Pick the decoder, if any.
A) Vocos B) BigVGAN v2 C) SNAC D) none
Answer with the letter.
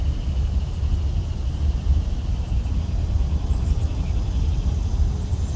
D